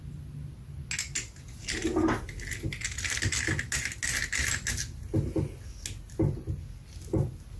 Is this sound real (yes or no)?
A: yes